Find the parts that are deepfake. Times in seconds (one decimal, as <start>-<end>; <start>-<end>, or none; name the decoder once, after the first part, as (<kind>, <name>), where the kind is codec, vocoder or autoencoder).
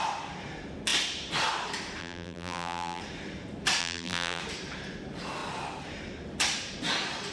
2.0-3.0 (vocoder, BigVGAN v2); 3.8-4.4